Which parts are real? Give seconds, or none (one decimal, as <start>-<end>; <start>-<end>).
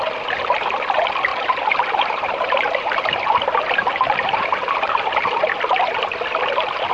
0.0-1.3; 5.4-6.9